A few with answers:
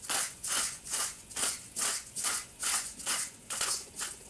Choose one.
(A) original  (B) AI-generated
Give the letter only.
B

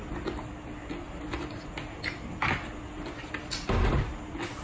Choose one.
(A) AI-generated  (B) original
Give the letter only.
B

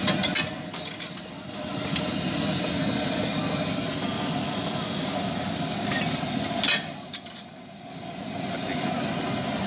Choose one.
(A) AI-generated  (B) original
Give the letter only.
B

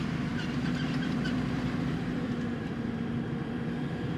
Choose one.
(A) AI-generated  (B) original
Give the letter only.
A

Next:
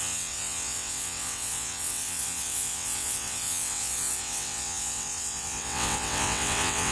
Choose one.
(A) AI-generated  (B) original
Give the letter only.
A